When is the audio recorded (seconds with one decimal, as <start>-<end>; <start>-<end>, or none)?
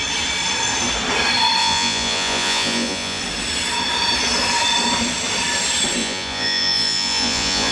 0.0-1.6; 3.2-6.0